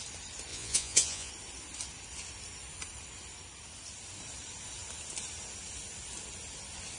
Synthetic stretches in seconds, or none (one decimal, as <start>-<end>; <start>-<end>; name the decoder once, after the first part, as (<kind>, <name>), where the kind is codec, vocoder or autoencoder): 0.5-1.3 (vocoder, Vocos)